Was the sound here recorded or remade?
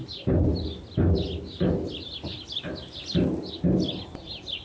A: recorded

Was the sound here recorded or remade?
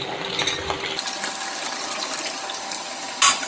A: recorded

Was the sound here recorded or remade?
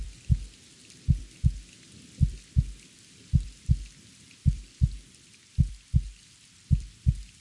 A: recorded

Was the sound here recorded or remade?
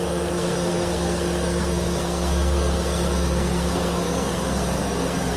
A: remade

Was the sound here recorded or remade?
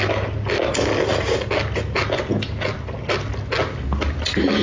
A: recorded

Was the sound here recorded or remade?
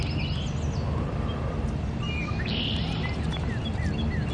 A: recorded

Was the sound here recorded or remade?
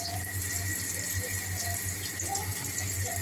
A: recorded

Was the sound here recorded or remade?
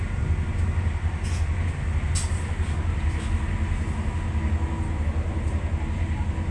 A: recorded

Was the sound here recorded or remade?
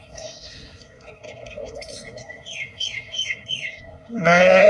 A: remade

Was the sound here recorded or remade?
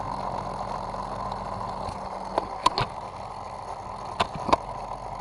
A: recorded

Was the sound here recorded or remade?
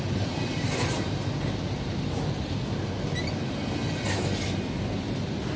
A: recorded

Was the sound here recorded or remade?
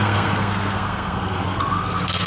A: remade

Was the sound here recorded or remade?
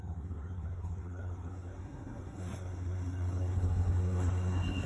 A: remade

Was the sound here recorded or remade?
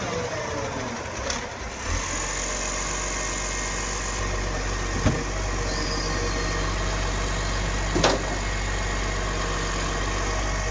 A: recorded